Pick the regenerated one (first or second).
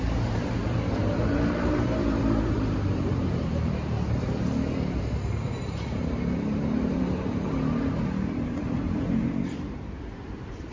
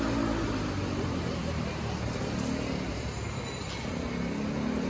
first